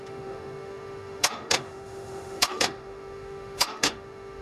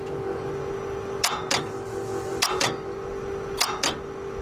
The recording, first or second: second